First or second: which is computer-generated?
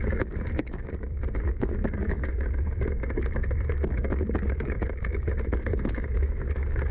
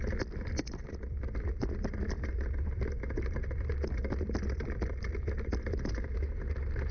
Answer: first